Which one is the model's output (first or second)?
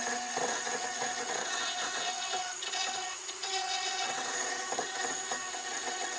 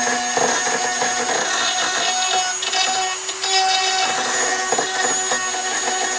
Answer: first